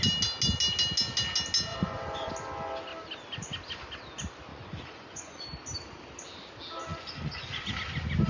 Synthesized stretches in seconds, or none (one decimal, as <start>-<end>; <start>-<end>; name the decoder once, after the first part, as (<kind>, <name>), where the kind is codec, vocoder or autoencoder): 1.7-2.3 (vocoder, Vocos); 4.5-5.4; 6.9-7.6